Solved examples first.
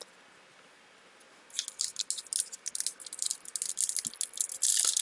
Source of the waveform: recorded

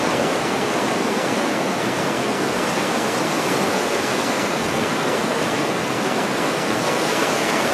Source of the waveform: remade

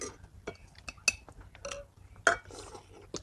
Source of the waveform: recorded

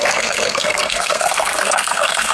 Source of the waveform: remade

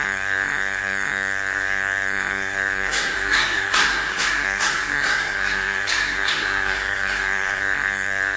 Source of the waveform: remade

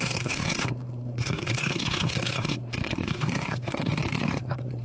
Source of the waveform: remade